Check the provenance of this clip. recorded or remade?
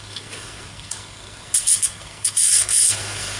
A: remade